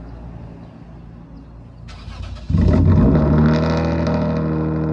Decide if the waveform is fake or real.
real